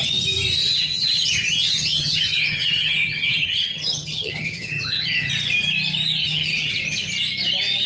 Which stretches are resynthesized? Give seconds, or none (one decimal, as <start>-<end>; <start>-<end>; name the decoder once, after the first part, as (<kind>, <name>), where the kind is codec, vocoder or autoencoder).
0.6-5.3 (vocoder, HiFi-GAN); 6.2-7.1